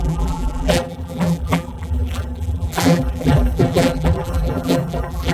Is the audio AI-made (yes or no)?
yes